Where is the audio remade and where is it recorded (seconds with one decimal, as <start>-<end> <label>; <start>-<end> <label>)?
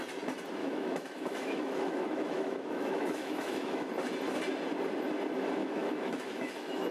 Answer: 0.0-0.6 recorded; 0.6-3.9 remade; 3.9-5.6 recorded; 5.6-6.9 remade